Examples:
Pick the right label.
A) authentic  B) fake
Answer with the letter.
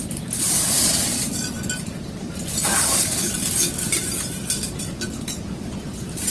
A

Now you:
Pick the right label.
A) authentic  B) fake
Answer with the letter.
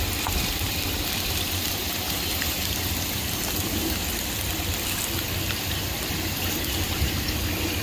A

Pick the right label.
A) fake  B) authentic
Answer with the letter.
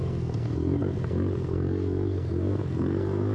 A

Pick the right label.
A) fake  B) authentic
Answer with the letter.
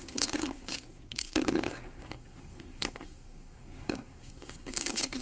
A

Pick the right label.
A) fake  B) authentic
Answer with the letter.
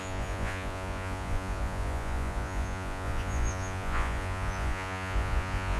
A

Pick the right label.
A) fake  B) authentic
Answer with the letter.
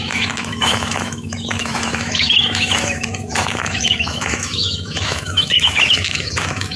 A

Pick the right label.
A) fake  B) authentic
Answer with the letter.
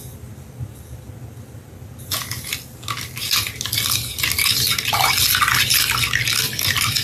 B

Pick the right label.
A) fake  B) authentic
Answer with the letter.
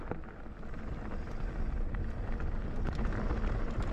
B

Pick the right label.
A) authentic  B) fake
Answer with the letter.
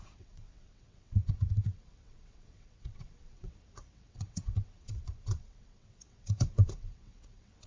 B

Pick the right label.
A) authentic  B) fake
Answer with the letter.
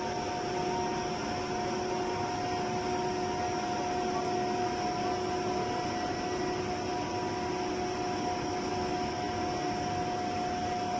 A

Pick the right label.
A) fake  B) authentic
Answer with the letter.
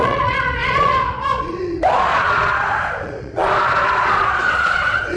A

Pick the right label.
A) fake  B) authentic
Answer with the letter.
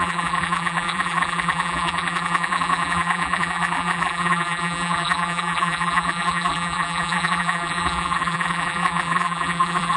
A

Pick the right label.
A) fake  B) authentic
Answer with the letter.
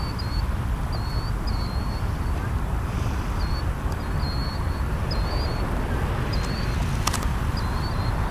B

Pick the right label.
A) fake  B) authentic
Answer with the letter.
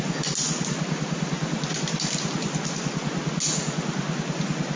B